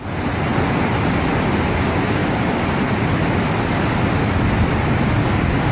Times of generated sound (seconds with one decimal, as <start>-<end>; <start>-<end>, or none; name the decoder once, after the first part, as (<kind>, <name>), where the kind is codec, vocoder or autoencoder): none